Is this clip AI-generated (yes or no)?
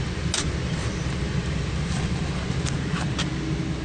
no